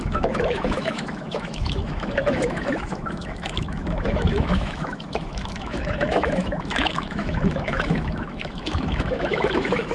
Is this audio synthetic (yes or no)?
yes